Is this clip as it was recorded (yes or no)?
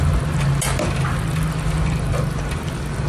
yes